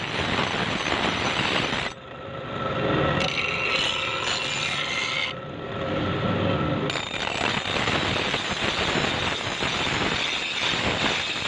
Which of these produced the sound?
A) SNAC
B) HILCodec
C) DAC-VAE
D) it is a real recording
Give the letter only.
D